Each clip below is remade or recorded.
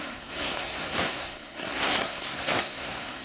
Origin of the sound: remade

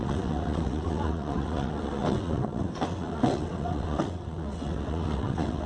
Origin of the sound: remade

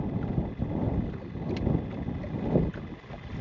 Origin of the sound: recorded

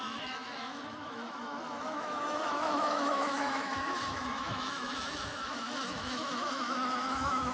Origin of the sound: remade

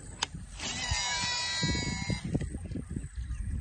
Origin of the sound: recorded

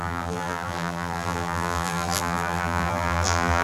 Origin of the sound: remade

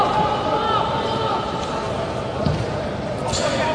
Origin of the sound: recorded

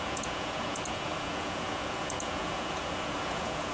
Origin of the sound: remade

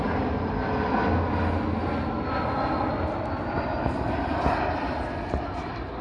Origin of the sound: recorded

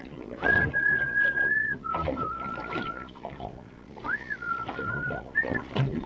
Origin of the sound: remade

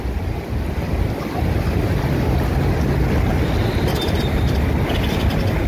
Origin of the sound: recorded